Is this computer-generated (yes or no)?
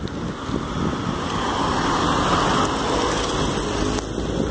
no